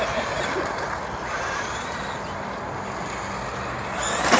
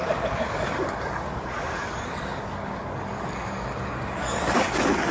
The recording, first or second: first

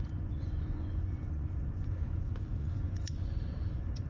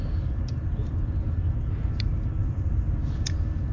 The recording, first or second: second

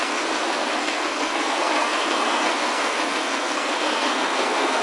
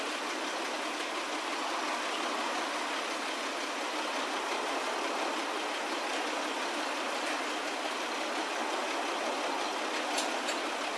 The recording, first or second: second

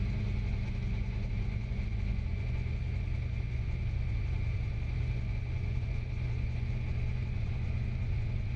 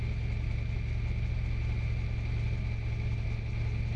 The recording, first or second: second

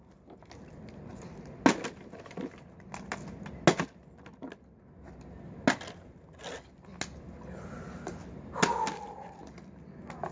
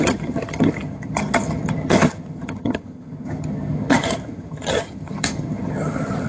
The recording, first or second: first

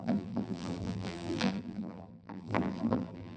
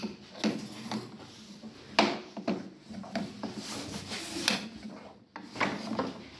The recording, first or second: second